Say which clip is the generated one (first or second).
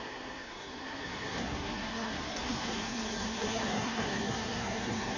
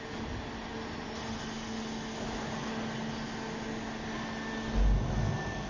first